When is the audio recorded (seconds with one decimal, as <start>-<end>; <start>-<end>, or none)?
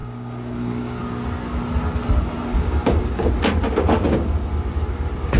1.0-2.5; 3.3-5.4